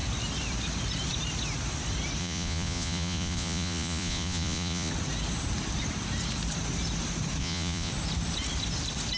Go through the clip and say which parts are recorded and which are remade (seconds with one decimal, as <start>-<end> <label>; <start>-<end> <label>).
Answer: 0.0-2.2 recorded; 2.2-4.9 remade; 4.9-7.4 recorded; 7.4-7.9 remade; 7.9-9.2 recorded